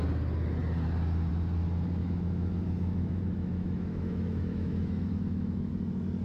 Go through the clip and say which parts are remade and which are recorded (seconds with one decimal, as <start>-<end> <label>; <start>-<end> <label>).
0.0-2.0 recorded; 2.0-5.7 remade; 5.7-6.2 recorded